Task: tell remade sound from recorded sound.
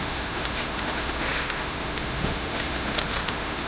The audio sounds remade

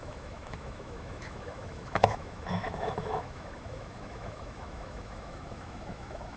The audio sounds remade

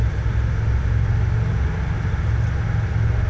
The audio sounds recorded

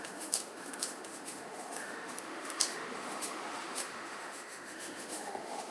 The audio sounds remade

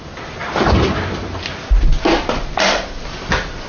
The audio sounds recorded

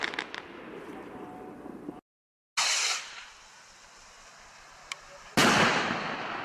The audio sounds recorded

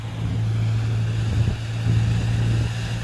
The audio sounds recorded